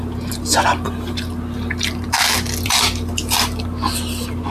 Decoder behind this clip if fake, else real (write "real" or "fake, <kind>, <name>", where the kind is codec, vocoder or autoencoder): fake, vocoder, BigVGAN v2